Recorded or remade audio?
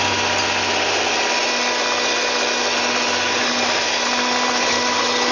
recorded